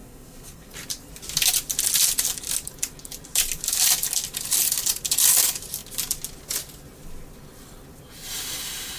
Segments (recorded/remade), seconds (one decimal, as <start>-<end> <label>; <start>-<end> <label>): 0.0-0.7 remade; 0.7-9.0 recorded